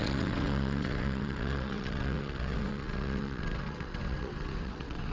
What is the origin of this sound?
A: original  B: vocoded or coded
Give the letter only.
B